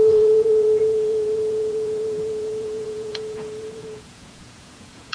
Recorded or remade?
remade